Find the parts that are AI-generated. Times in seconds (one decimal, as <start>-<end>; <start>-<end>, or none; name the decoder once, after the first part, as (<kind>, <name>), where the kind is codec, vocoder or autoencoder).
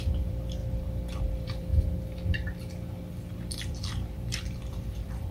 0.0-0.6 (vocoder, BigVGAN v2); 1.2-1.7; 3.1-5.3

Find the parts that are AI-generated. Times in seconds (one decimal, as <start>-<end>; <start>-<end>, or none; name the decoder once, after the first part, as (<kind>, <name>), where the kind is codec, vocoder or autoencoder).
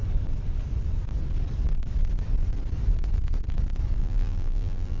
4.0-5.0 (vocoder, BigVGAN v2)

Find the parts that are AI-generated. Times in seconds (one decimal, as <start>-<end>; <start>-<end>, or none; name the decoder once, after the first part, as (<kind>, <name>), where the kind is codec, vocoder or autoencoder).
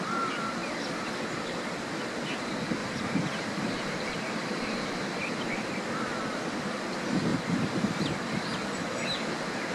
2.8-5.7 (vocoder, BigVGAN v2); 7.3-8.0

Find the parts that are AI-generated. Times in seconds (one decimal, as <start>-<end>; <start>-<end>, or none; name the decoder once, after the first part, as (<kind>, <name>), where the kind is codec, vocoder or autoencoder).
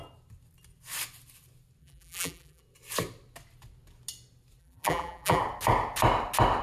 1.8-2.6 (vocoder, BigVGAN v2); 4.6-5.4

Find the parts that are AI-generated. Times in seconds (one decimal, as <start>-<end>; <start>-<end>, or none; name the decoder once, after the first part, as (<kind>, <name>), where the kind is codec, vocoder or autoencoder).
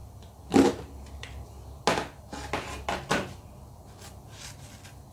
none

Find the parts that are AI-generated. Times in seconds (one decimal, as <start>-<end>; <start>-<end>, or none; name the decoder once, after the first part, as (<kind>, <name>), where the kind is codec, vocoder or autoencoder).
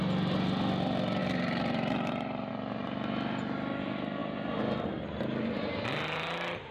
1.2-2.5 (vocoder, BigVGAN v2)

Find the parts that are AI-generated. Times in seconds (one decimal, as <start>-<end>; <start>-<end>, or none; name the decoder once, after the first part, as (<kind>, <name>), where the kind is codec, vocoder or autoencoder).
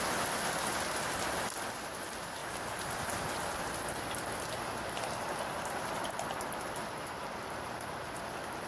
2.4-3.7 (vocoder, BigVGAN v2)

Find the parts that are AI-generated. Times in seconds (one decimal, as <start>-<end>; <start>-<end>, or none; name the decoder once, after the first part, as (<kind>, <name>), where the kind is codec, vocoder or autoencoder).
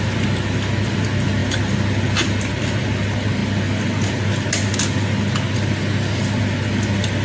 1.4-2.6 (vocoder, BigVGAN v2)